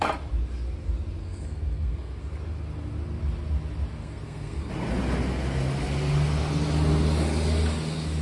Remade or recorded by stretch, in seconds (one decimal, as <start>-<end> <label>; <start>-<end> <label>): 0.0-1.2 recorded; 1.2-2.2 remade; 2.2-4.0 recorded; 4.0-4.7 remade; 4.7-8.2 recorded